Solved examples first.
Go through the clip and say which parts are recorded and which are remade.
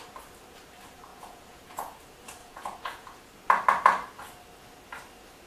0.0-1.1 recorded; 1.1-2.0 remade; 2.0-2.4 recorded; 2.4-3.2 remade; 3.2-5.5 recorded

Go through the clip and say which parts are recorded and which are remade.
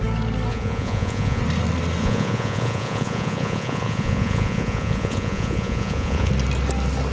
0.0-0.5 recorded; 0.5-1.4 remade; 1.4-2.0 recorded; 2.0-6.3 remade; 6.3-7.1 recorded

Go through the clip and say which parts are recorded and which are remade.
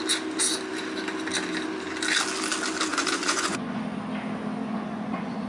0.0-2.9 recorded; 2.9-3.8 remade; 3.8-4.6 recorded; 4.6-5.5 remade